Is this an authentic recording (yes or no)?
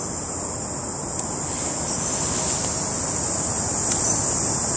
yes